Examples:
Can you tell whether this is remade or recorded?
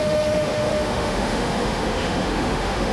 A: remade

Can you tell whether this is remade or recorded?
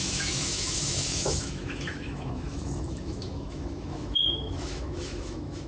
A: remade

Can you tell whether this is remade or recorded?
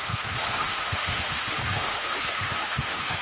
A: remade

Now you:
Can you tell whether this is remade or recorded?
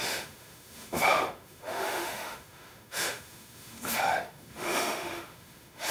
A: remade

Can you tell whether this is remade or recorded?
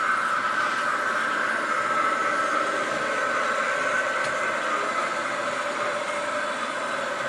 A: recorded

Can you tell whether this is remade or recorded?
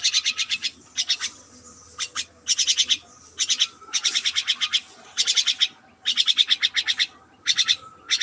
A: recorded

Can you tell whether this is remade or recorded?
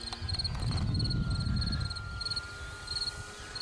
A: recorded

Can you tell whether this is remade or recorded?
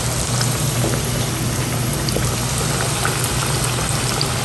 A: recorded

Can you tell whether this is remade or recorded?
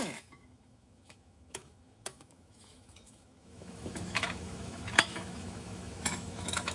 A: remade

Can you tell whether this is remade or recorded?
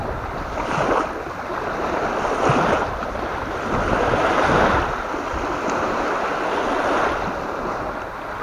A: recorded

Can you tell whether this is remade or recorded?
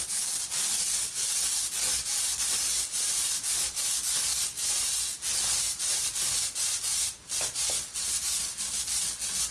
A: recorded